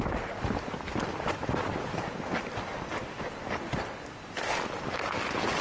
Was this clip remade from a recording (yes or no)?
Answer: no